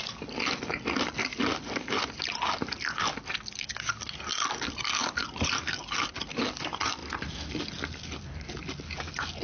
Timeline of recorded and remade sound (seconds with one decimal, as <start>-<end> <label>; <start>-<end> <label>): 0.0-9.4 recorded